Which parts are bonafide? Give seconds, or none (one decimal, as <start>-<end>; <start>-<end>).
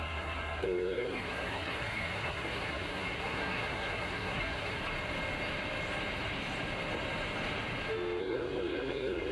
4.8-8.2